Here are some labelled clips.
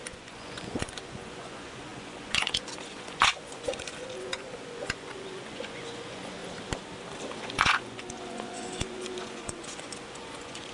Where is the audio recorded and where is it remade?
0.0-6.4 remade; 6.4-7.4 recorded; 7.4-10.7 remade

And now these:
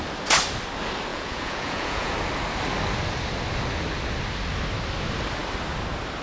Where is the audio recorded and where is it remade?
0.0-1.1 recorded; 1.1-2.1 remade; 2.1-6.2 recorded

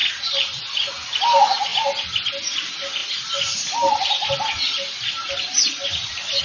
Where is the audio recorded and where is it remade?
0.0-0.9 remade; 0.9-3.0 recorded; 3.0-4.3 remade; 4.3-6.4 recorded

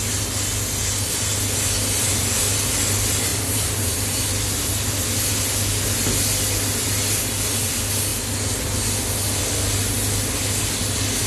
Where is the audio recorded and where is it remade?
0.0-3.3 recorded; 3.3-4.7 remade; 4.7-11.3 recorded

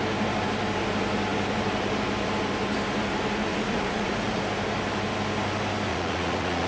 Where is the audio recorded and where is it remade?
0.0-3.5 recorded; 3.5-4.4 remade; 4.4-5.9 recorded; 5.9-6.7 remade

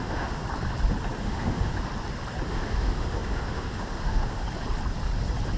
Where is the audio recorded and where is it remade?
0.0-0.4 remade; 0.4-1.2 recorded; 1.2-1.7 remade; 1.7-2.5 recorded; 2.5-4.4 remade; 4.4-5.6 recorded